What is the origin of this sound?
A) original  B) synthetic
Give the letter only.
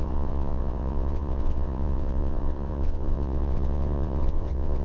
B